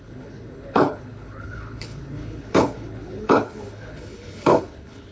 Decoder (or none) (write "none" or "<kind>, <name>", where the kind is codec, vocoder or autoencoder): codec, HILCodec